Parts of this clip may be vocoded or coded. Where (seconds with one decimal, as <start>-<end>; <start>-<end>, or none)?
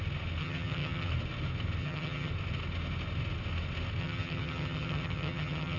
0.4-1.1; 1.8-2.3; 4.0-5.8